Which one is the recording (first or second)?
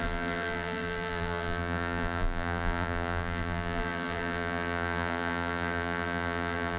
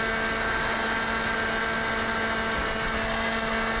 second